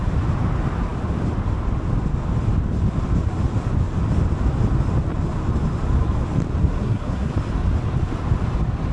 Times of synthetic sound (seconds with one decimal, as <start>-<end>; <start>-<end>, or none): 6.6-7.3